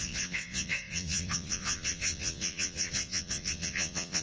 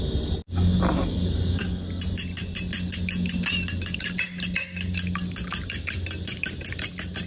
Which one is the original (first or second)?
second